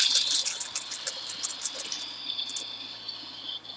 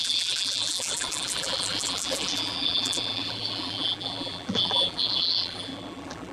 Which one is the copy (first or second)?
second